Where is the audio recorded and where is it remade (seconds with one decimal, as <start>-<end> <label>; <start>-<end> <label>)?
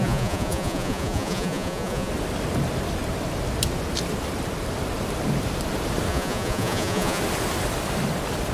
0.0-2.1 remade; 2.1-6.1 recorded; 6.1-7.2 remade; 7.2-8.5 recorded